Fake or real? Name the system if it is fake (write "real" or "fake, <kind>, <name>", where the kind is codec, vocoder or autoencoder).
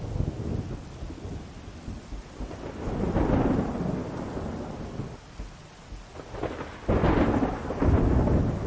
real